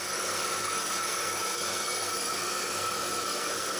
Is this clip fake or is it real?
fake